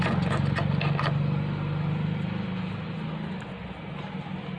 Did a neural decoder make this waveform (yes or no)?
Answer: no